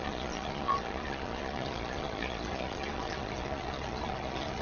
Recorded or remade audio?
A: remade